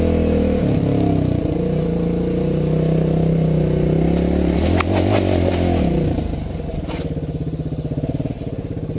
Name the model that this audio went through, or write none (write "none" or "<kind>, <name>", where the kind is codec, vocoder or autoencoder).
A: none